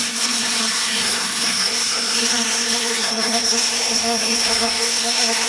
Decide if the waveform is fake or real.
fake